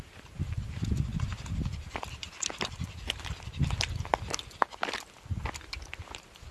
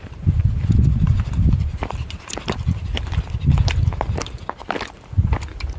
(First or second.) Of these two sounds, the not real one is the second